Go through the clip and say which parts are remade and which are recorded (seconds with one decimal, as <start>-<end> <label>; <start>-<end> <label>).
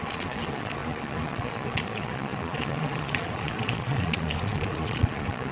0.0-5.5 remade